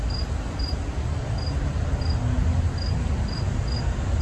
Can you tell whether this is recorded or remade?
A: recorded